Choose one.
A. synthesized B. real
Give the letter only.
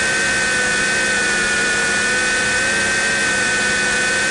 B